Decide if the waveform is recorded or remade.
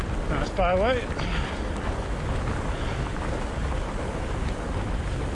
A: recorded